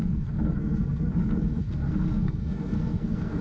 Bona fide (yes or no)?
no